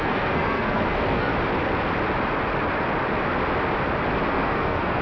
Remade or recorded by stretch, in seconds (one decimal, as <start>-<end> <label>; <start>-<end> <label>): 0.0-1.3 remade; 1.3-4.3 recorded; 4.3-5.0 remade